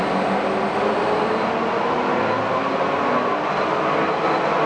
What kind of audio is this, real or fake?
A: real